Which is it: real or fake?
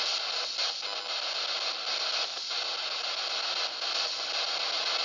real